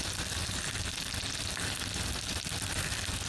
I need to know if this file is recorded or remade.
recorded